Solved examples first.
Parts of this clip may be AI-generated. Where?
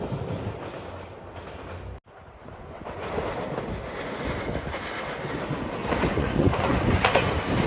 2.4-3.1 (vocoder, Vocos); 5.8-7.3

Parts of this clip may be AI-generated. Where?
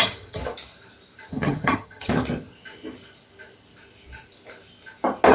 0.0-0.4 (vocoder, HiFi-GAN); 1.3-2.1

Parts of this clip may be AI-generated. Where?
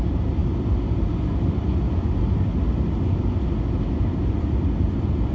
none